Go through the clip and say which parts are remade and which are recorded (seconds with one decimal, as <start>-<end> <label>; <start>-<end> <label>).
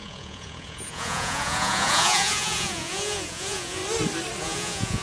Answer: 0.0-3.8 remade; 3.8-4.4 recorded; 4.4-5.0 remade